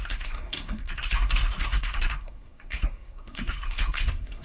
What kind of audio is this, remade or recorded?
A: remade